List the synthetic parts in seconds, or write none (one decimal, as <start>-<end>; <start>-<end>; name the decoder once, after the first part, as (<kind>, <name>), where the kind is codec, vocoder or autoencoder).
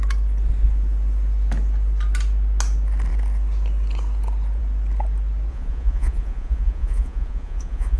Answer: 5.5-8.0 (vocoder, Vocos)